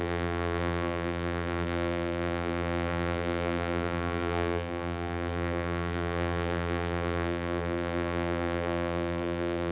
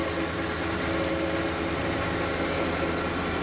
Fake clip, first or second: first